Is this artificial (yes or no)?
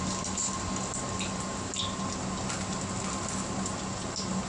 no